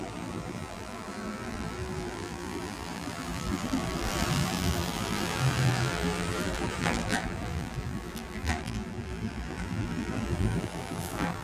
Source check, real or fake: fake